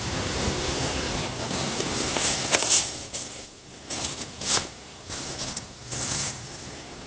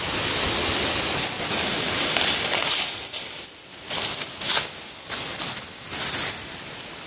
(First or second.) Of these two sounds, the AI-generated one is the first